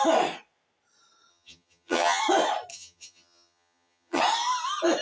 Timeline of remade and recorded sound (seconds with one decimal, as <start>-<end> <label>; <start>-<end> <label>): 0.0-1.3 recorded; 1.3-2.2 remade; 2.2-2.7 recorded; 2.7-4.2 remade; 4.2-5.0 recorded